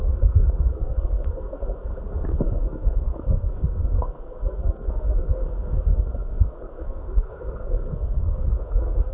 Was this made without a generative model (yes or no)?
no